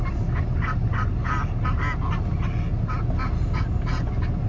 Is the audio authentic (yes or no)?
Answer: yes